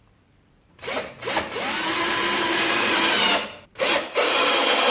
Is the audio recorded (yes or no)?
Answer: no